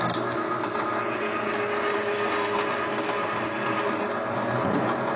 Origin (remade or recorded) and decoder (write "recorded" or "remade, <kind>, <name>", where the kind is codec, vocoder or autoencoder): recorded